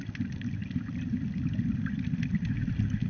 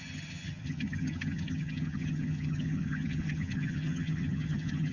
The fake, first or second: second